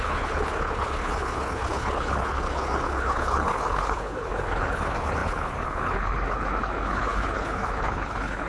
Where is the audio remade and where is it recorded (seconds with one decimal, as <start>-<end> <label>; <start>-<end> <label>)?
0.0-8.5 remade